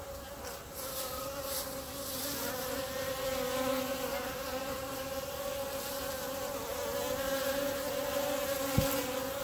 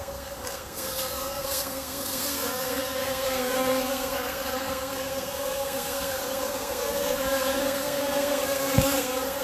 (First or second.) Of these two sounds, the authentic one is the first